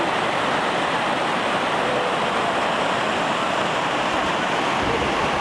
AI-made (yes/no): no